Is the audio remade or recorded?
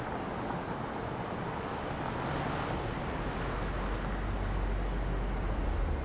recorded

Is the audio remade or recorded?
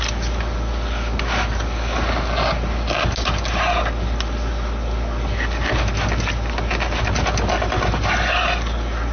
recorded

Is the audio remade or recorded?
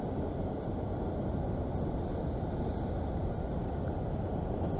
recorded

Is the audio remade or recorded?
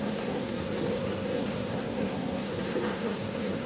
remade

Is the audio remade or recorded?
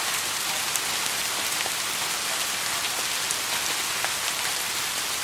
recorded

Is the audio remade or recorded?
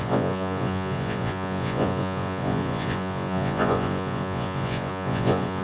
remade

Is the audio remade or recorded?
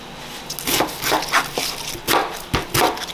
recorded